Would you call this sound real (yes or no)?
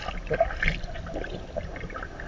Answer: yes